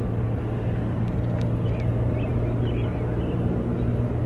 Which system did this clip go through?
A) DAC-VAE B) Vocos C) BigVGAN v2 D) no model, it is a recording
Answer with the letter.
D